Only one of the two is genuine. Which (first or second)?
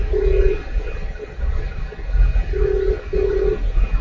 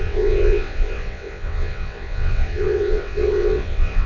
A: first